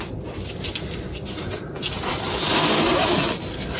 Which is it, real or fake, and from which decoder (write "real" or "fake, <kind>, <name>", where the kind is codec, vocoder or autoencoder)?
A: real